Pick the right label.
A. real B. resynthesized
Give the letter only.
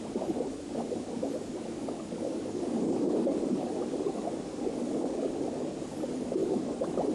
B